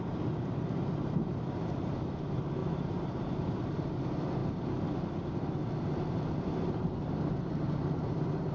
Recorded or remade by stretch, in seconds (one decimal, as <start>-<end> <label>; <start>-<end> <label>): 0.0-4.4 remade; 4.4-7.0 recorded; 7.0-8.5 remade